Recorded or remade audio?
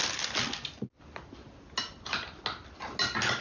recorded